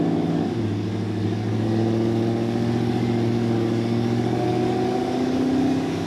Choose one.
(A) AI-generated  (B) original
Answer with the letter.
A